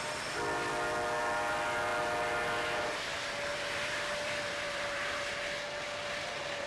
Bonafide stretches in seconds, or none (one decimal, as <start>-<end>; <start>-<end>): 0.0-3.5; 5.3-6.7